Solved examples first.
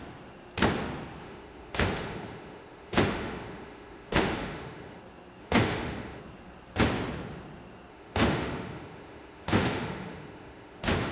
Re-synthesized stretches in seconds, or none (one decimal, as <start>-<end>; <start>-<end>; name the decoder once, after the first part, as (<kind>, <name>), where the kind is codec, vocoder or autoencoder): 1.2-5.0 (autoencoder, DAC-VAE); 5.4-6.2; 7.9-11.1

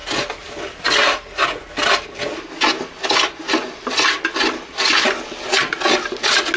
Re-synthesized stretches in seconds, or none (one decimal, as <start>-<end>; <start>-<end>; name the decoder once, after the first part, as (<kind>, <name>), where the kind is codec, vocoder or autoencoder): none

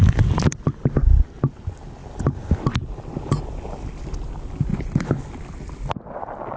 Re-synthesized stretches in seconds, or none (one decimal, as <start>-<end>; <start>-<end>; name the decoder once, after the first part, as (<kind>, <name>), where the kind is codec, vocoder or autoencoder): none

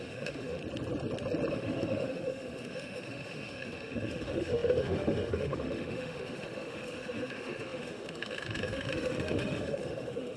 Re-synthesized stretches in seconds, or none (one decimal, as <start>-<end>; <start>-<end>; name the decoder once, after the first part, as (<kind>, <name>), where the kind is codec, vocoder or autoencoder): 0.0-0.6 (autoencoder, DAC-VAE); 1.5-10.4

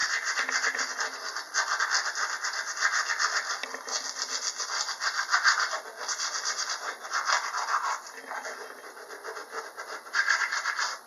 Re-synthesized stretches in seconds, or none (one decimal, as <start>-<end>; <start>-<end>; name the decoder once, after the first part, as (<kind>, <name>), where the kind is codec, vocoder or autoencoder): none

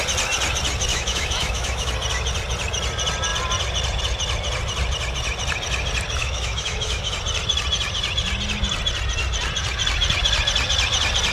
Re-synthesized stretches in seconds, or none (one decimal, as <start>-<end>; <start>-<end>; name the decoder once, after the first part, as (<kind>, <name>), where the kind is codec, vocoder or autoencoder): 0.9-1.9 (autoencoder, DAC-VAE); 6.2-7.1

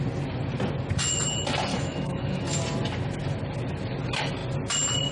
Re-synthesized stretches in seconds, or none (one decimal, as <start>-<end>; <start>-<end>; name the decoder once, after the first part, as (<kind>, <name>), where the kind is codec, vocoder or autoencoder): 1.7-2.4 (autoencoder, DAC-VAE)

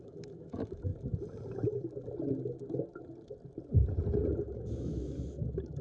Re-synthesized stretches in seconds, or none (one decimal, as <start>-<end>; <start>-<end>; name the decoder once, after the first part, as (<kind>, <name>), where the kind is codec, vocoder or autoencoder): 0.0-0.9 (autoencoder, DAC-VAE); 4.4-5.8